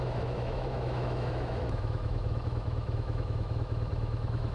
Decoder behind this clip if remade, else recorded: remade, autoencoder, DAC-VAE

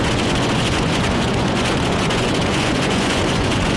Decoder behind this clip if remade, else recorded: remade, vocoder, Vocos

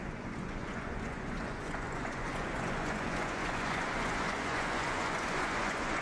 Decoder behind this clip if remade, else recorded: remade, vocoder, Vocos